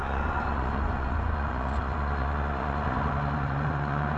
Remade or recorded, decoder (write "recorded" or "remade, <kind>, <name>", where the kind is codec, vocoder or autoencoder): remade, vocoder, Vocos